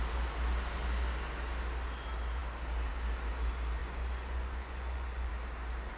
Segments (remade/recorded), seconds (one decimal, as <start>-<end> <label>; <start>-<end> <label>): 0.0-3.8 recorded; 3.8-5.3 remade; 5.3-6.0 recorded

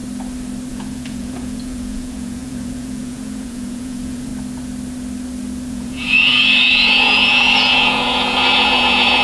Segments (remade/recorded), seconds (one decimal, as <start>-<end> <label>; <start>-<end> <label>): 0.0-0.7 recorded; 0.7-4.3 remade; 4.3-5.7 recorded; 5.7-9.2 remade

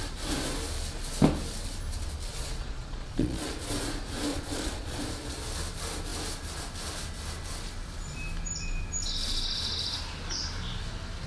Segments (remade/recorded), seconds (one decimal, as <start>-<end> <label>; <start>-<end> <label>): 0.0-2.3 recorded; 2.3-3.5 remade; 3.5-4.3 recorded; 4.3-5.0 remade; 5.0-11.3 recorded

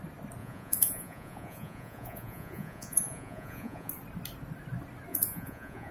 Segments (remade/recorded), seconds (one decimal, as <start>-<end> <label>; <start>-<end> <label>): 0.0-0.4 recorded; 0.4-3.9 remade; 3.9-5.1 recorded; 5.1-5.9 remade

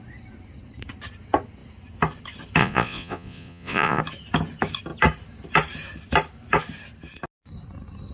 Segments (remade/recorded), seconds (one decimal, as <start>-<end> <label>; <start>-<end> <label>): 0.0-2.6 recorded; 2.6-4.0 remade; 4.0-8.1 recorded

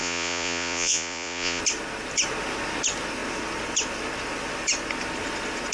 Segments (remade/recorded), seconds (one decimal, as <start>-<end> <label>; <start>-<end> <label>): 0.0-1.6 remade; 1.6-5.7 recorded